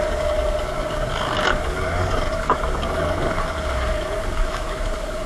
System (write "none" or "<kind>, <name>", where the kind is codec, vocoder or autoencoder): codec, DAC